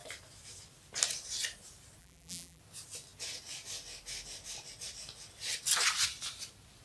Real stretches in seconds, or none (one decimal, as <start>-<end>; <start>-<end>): 0.0-2.0; 2.6-6.8